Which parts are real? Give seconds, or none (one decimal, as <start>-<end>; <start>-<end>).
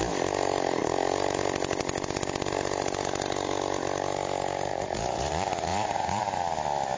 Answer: 0.0-4.7; 5.3-5.7; 6.2-7.0